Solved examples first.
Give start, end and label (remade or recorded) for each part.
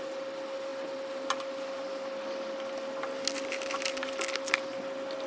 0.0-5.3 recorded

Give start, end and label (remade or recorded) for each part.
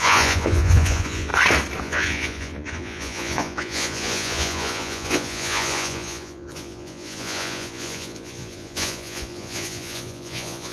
0.0-1.3 remade; 1.3-1.8 recorded; 1.8-10.7 remade